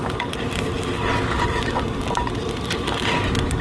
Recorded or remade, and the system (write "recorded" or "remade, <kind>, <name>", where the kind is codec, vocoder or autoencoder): recorded